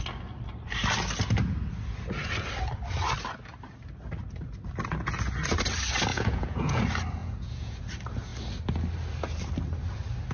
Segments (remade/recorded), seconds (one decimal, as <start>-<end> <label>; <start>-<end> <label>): 0.0-6.1 recorded; 6.1-6.8 remade; 6.8-7.2 recorded; 7.2-7.8 remade; 7.8-10.3 recorded